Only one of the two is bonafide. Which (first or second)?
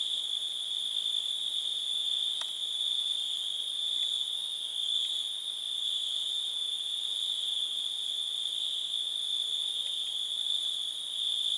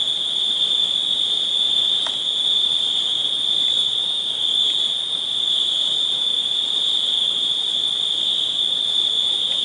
first